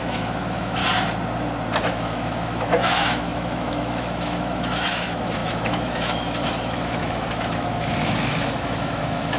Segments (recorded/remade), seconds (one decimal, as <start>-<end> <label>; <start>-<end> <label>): 0.0-0.8 remade; 0.8-1.8 recorded; 1.8-9.4 remade